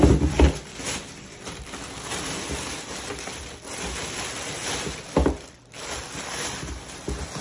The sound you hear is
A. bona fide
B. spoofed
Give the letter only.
A